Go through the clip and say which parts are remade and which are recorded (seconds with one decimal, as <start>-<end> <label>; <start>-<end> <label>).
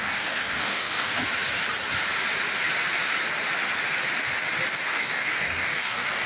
0.0-1.1 remade; 1.1-4.9 recorded; 4.9-6.3 remade